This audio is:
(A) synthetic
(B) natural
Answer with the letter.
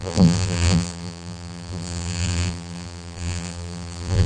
A